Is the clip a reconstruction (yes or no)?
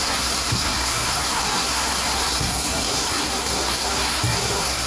yes